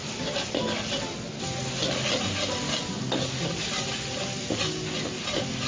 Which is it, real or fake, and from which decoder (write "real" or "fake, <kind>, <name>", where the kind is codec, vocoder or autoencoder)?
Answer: real